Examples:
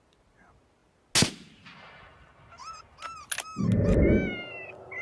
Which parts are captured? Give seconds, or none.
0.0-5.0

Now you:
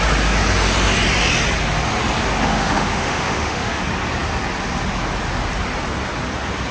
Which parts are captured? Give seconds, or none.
0.0-2.4; 3.8-6.7

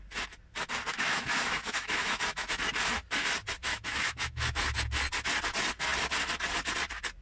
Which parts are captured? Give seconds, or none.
0.0-0.9; 2.6-3.6; 4.6-7.2

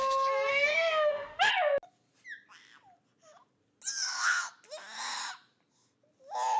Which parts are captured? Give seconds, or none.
0.0-0.5; 1.5-6.6

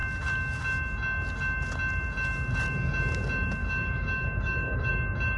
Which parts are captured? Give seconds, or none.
0.0-3.6; 4.9-5.4

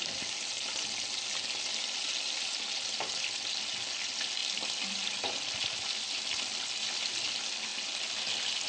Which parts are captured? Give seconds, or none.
0.0-8.7

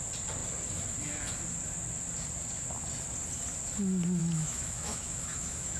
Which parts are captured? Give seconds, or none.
0.0-4.2